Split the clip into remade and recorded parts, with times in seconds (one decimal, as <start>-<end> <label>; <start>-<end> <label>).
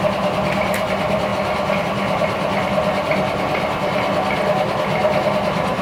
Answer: 0.0-5.8 recorded